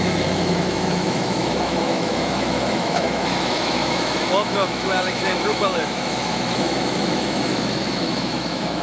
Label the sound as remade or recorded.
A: remade